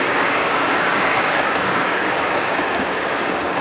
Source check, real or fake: fake